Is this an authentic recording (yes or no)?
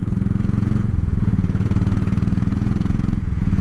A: no